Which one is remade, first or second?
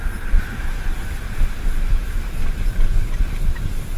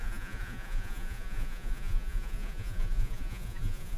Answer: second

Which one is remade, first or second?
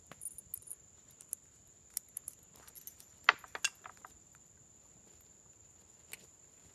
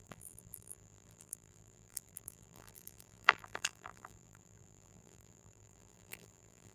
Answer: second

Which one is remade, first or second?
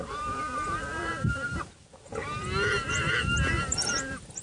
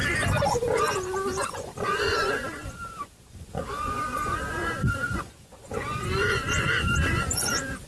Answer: second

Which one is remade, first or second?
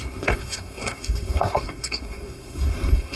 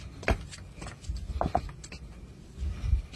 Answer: first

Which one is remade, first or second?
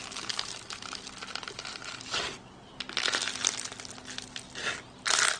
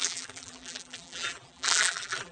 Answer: second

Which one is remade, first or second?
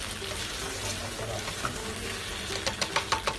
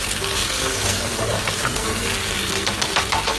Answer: second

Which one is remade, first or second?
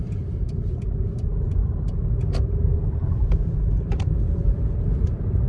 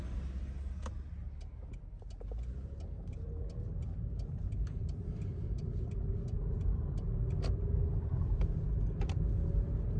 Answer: first